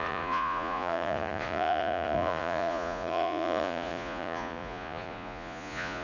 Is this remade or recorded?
remade